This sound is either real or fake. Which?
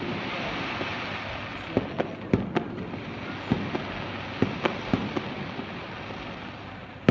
real